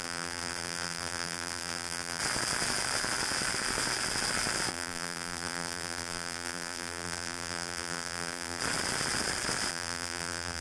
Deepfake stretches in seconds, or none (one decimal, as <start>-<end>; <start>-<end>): 0.0-2.2; 4.7-8.6; 9.7-10.6